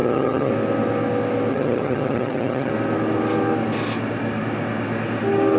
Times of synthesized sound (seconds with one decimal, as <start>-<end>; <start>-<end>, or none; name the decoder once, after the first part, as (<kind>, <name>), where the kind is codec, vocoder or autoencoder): 0.0-0.5 (vocoder, HiFi-GAN); 1.5-2.7